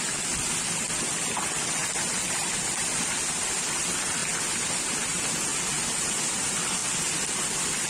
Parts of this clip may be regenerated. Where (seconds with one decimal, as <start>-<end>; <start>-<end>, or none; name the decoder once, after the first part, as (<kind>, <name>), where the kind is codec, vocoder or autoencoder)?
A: none